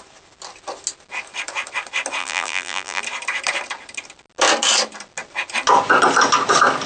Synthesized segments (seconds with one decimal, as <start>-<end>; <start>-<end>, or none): 2.2-3.0

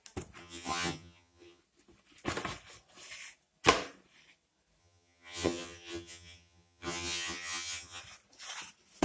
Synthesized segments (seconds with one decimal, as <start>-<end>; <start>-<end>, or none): 0.4-1.6; 4.8-8.0